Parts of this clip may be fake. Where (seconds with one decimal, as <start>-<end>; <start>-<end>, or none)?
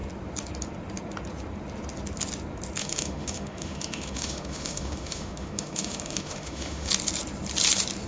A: 2.8-6.9